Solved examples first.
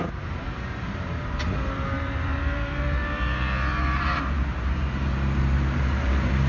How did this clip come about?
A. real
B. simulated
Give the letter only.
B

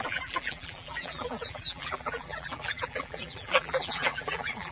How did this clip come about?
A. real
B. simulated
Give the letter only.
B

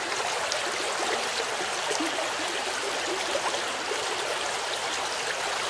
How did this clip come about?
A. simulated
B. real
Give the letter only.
B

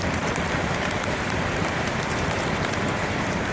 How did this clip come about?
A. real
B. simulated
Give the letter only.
B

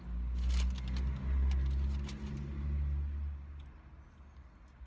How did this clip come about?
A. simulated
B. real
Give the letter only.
B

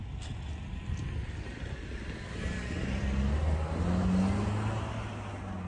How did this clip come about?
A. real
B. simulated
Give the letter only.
A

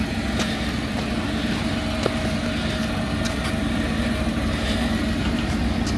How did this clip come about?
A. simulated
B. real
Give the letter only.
B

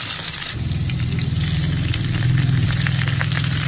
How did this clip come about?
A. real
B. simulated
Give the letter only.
B